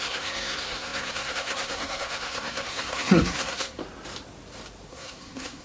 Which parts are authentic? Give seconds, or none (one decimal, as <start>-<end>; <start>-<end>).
3.8-4.9